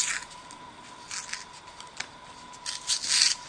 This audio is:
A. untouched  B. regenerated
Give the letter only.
A